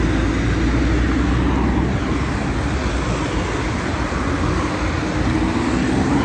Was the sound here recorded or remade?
recorded